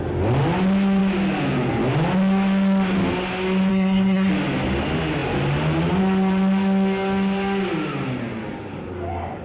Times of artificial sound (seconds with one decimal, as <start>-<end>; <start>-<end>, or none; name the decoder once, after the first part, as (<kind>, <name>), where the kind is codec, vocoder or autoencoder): 3.7-4.3 (codec, SNAC)